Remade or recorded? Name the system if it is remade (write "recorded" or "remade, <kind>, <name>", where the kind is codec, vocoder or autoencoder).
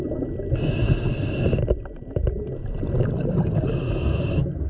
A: recorded